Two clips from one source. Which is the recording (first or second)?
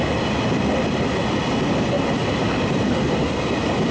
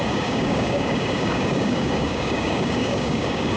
first